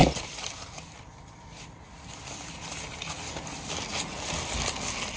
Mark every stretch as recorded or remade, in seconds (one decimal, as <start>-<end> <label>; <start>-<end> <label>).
0.0-5.2 recorded